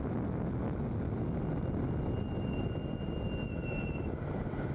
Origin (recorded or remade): recorded